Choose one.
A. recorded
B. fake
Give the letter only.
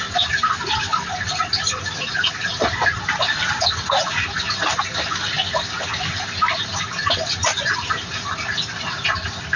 A